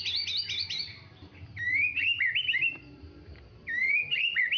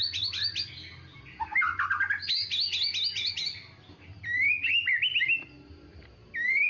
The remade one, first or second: first